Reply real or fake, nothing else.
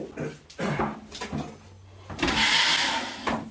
real